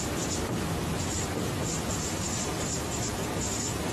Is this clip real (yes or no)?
no